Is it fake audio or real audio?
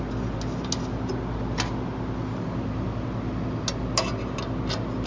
real